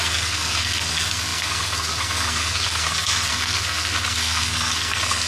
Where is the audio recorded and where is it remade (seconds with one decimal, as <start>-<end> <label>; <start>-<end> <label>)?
0.0-5.3 remade